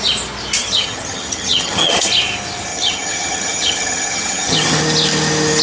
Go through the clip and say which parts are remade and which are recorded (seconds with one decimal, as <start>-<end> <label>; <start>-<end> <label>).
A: 0.0-0.6 recorded; 0.6-2.1 remade; 2.1-2.7 recorded; 2.7-4.8 remade; 4.8-5.6 recorded